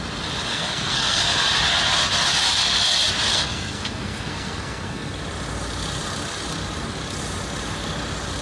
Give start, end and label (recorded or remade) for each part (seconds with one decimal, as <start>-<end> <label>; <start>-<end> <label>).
0.0-0.5 recorded; 0.5-1.2 remade; 1.2-3.3 recorded; 3.3-5.2 remade; 5.2-8.4 recorded